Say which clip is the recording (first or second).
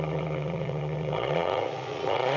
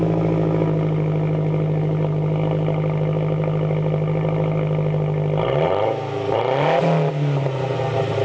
second